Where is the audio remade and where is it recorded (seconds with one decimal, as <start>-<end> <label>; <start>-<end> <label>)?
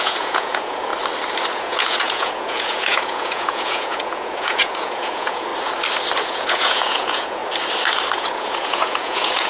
0.0-0.9 remade; 0.9-1.5 recorded; 1.5-5.5 remade; 5.5-6.2 recorded; 6.2-7.4 remade; 7.4-8.1 recorded; 8.1-9.5 remade